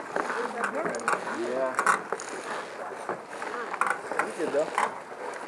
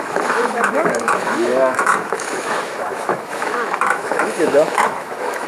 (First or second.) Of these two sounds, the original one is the first